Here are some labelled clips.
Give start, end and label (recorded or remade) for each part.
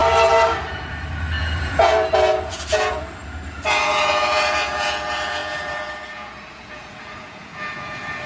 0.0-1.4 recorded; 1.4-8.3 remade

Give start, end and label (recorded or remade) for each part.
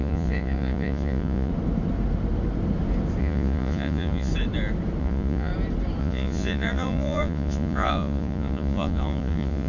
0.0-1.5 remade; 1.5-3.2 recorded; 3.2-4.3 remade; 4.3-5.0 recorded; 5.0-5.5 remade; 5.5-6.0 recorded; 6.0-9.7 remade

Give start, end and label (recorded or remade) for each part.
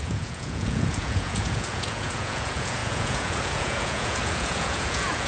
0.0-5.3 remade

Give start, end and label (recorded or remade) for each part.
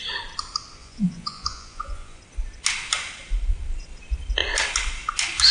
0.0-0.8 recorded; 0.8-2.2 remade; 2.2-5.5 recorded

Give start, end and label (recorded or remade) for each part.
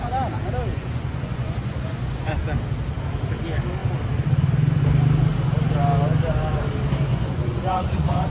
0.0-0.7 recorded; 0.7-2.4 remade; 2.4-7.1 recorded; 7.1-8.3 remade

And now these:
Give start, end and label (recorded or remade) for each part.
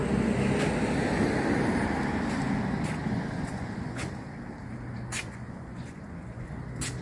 0.0-3.0 recorded; 3.0-4.1 remade; 4.1-5.1 recorded; 5.1-6.6 remade; 6.6-7.0 recorded